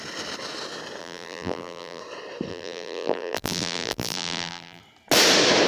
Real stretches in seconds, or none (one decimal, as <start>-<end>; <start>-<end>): 0.0-1.0; 2.0-2.5; 4.8-5.7